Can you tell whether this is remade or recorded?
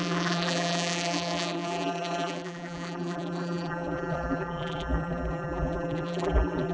remade